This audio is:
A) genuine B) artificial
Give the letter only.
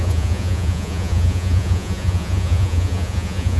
B